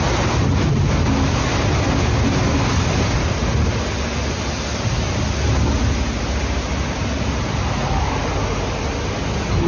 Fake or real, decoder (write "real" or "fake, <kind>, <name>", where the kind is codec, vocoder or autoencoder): real